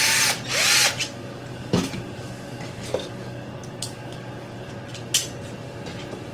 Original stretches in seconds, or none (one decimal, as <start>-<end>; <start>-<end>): 0.0-1.0; 4.7-6.3